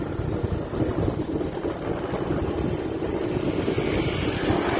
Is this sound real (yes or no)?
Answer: yes